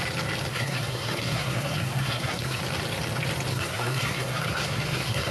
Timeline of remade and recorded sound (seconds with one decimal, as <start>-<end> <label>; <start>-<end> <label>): 0.0-0.5 recorded; 0.5-2.6 remade; 2.6-3.5 recorded; 3.5-5.3 remade